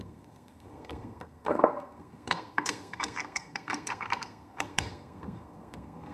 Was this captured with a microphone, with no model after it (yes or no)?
no